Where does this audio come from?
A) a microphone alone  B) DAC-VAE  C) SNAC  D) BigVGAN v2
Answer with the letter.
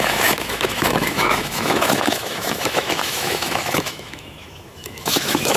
B